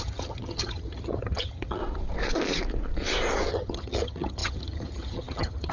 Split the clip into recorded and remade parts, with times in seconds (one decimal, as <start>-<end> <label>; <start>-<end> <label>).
0.0-1.8 remade; 1.8-3.5 recorded; 3.5-5.7 remade